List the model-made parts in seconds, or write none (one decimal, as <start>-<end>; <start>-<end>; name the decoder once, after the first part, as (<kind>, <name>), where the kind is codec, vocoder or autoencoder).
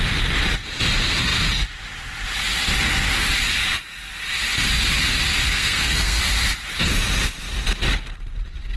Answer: 5.5-6.2 (codec, SNAC)